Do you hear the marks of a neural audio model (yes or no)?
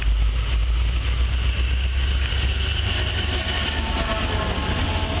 no